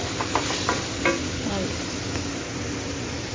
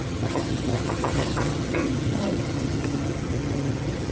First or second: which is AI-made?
second